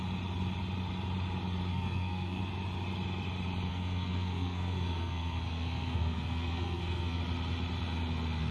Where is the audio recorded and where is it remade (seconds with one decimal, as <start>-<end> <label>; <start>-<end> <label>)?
0.0-1.7 recorded; 1.7-2.4 remade; 2.4-3.7 recorded; 3.7-7.2 remade; 7.2-8.5 recorded